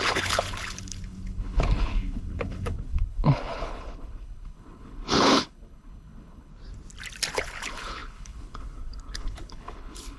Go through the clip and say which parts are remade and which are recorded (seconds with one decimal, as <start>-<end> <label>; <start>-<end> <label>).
0.0-6.5 remade; 6.5-7.3 recorded; 7.3-10.2 remade